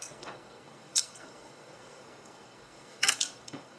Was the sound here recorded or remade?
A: remade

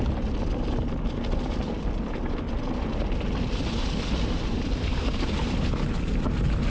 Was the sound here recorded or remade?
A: recorded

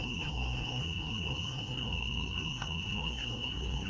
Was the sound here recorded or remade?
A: remade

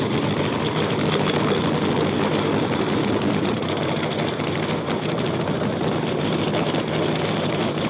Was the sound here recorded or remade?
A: recorded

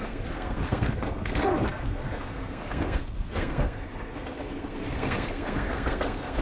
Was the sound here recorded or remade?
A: remade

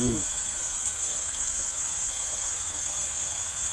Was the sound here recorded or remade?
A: remade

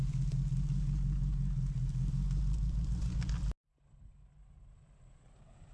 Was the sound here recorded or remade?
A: recorded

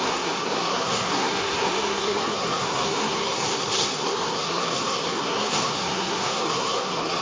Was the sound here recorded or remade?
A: remade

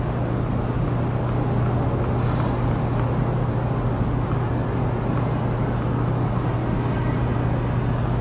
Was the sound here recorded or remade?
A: recorded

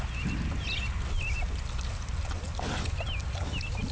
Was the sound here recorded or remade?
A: recorded